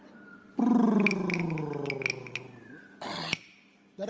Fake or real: real